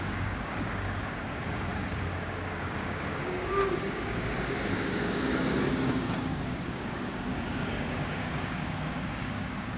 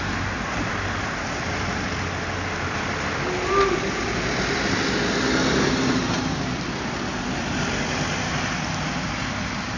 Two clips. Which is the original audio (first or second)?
second